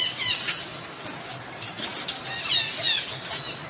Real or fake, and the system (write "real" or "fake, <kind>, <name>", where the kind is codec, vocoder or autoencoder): real